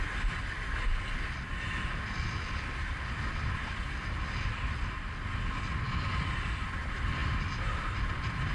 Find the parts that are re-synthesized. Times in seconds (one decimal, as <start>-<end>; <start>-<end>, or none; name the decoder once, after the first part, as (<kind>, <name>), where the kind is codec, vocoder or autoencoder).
none